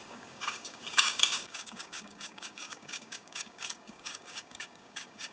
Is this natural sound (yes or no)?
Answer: no